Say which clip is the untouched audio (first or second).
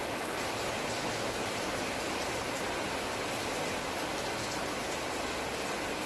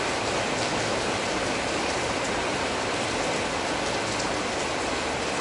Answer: first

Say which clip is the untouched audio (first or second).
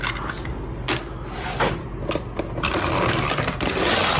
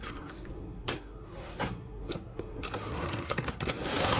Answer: first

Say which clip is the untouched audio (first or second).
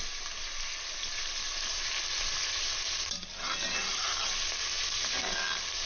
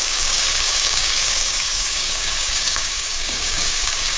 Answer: first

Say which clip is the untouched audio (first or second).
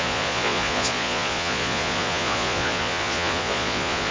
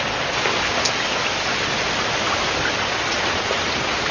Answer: second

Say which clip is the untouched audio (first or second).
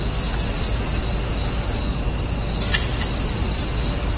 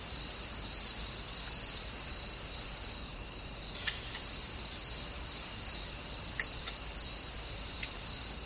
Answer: first